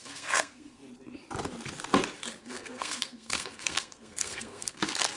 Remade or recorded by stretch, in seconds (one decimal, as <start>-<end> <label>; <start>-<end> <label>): 0.0-0.8 remade; 0.8-2.4 recorded; 2.4-5.2 remade